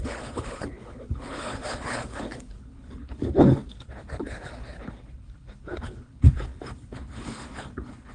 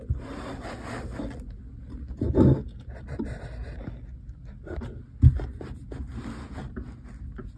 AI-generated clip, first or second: first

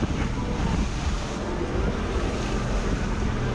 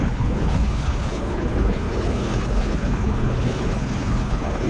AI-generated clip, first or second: second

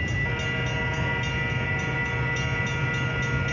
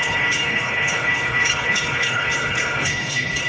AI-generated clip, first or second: second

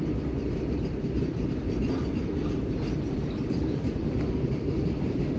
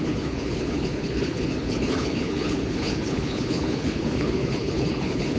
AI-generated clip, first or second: second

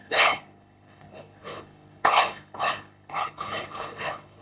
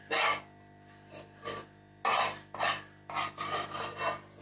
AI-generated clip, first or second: first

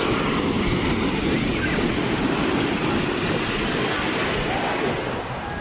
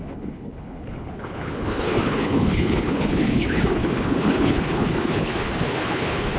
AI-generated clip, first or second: second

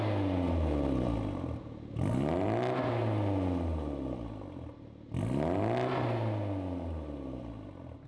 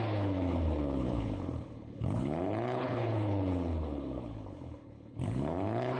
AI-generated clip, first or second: second